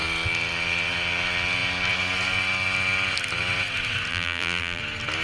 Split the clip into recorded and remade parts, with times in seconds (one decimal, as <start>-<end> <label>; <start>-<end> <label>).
0.0-4.1 recorded; 4.1-4.8 remade; 4.8-5.2 recorded